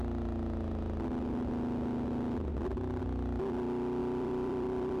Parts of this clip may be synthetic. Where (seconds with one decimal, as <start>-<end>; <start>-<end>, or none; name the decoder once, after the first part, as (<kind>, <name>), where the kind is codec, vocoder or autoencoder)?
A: 4.0-5.0 (vocoder, BigVGAN v2)